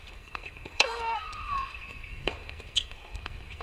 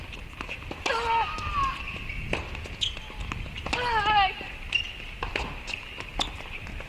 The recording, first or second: second